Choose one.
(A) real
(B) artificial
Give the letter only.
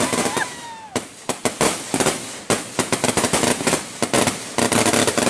A